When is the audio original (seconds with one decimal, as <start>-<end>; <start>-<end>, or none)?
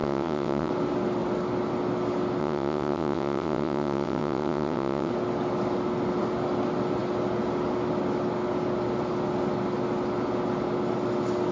0.7-2.4; 5.1-11.5